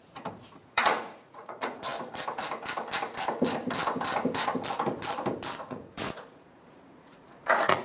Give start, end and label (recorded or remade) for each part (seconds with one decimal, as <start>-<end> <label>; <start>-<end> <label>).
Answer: 0.0-1.9 remade; 1.9-5.6 recorded; 5.6-7.8 remade